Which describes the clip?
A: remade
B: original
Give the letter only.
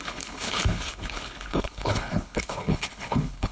A